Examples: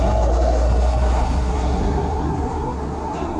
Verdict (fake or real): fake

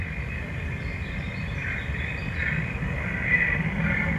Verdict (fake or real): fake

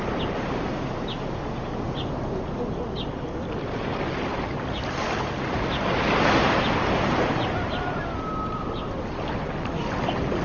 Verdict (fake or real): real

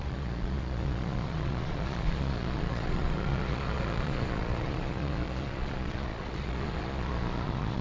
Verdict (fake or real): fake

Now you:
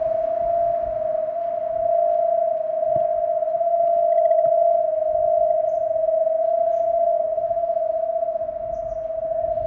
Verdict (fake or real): real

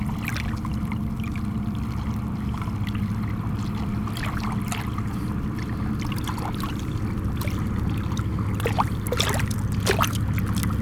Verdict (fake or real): real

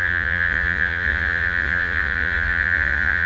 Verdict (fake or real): fake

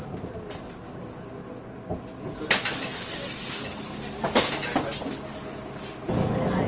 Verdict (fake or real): real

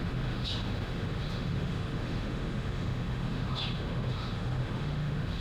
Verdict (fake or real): fake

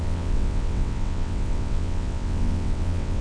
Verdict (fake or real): fake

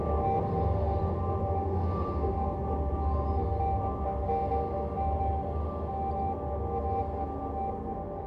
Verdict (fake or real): real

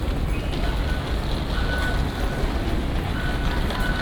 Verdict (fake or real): real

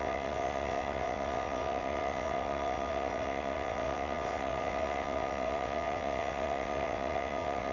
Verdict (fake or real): fake